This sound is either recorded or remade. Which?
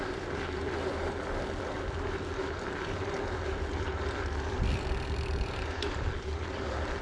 remade